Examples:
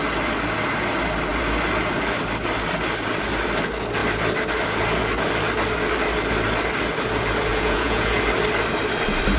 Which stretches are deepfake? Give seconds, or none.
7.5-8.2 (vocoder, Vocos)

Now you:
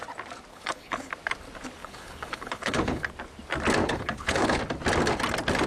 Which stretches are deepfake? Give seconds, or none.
0.5-1.1 (codec, HILCodec); 1.8-3.1; 3.8-4.6

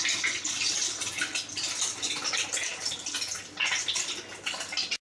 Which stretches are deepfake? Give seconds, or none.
none

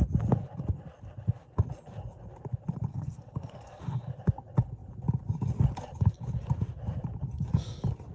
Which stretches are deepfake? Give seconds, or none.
2.9-3.8 (codec, SNAC)

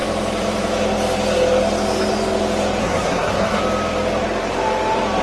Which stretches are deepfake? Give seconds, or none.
2.8-3.6 (codec, SNAC)

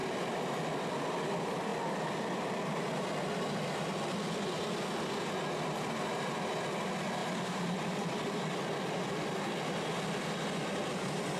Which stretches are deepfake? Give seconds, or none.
7.2-8.1 (vocoder, BigVGAN v2)